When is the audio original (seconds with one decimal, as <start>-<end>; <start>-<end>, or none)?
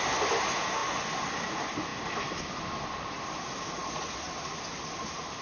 0.0-5.4